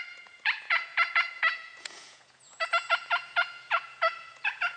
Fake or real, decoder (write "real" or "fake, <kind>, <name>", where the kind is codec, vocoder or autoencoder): fake, vocoder, Vocos